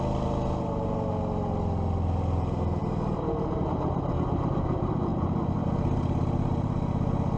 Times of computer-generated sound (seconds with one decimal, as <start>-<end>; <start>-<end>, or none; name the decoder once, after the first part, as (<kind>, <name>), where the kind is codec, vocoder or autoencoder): none